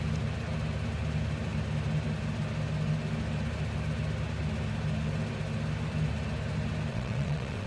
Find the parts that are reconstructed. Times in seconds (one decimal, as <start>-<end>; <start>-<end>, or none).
6.9-7.7